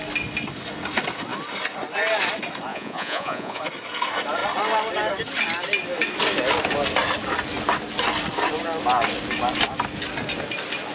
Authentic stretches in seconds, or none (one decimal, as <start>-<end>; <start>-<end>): 0.0-2.7; 3.6-10.9